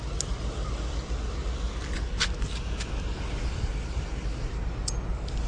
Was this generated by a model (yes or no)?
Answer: no